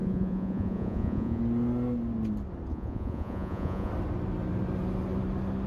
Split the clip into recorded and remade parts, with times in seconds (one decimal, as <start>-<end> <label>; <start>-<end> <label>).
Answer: 0.0-1.4 remade; 1.4-2.7 recorded; 2.7-3.9 remade; 3.9-5.7 recorded